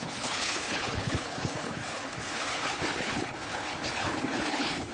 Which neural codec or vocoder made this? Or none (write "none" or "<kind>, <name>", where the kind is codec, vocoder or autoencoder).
codec, HILCodec